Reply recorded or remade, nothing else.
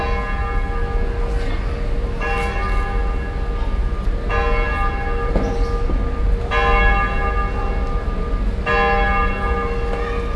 recorded